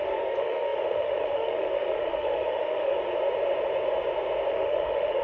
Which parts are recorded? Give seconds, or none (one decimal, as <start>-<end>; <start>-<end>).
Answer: 2.9-4.5